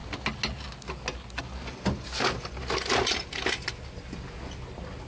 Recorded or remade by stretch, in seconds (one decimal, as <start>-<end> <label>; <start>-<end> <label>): 0.0-5.1 recorded